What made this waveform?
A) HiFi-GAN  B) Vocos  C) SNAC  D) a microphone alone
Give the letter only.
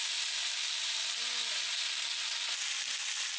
D